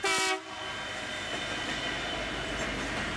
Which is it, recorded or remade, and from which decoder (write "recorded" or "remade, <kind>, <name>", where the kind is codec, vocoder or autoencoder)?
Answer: recorded